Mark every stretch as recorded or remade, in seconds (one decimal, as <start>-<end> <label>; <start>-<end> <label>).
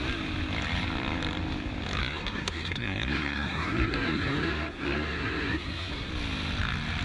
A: 0.0-2.0 recorded; 2.0-6.1 remade; 6.1-7.0 recorded